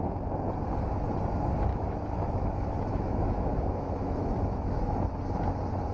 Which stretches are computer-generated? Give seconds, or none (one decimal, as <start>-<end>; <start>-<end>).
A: 1.7-5.2